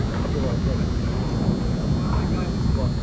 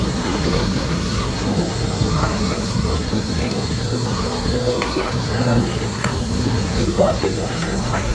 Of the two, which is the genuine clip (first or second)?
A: first